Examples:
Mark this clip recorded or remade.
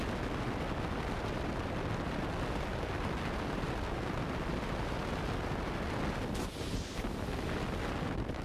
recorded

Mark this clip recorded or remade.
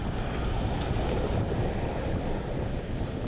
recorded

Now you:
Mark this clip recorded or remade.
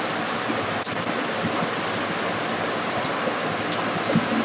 recorded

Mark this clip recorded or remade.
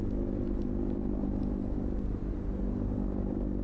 recorded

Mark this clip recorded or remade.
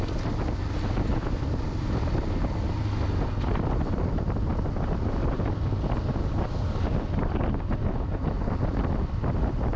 recorded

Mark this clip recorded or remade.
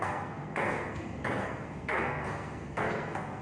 remade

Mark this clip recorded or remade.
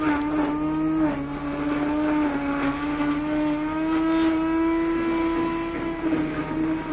recorded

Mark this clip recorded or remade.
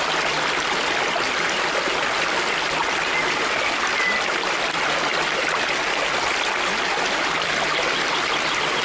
recorded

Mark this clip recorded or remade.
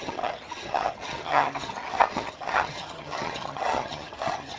remade